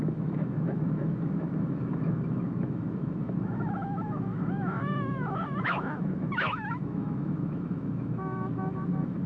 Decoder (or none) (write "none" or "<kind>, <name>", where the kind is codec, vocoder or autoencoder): autoencoder, DAC-VAE